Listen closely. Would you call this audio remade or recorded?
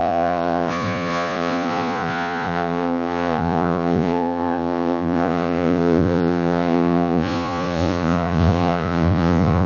remade